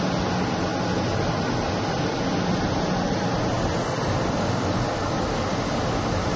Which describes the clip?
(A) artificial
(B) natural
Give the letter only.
B